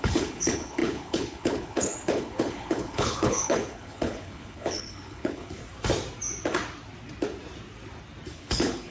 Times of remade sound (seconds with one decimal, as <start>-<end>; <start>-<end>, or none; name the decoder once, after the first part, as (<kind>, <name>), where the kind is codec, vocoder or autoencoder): 0.0-5.6 (codec, HILCodec); 8.3-8.9